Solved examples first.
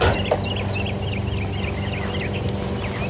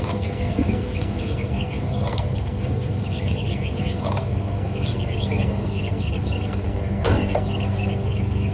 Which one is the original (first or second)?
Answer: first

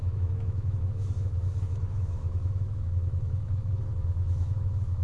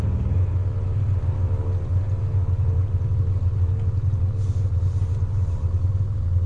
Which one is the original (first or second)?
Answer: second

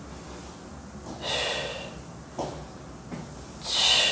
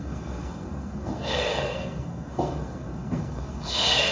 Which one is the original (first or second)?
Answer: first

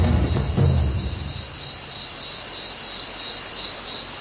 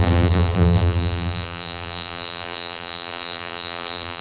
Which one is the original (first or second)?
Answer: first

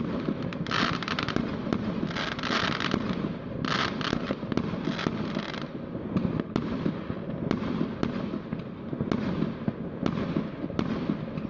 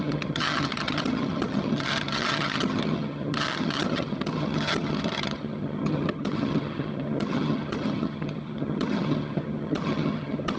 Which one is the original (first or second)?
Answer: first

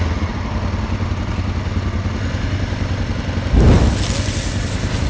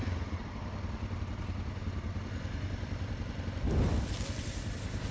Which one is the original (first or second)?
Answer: first